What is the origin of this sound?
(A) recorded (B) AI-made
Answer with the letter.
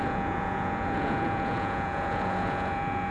B